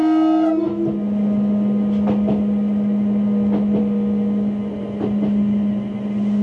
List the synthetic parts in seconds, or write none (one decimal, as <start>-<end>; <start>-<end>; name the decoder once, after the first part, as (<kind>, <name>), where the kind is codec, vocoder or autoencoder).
none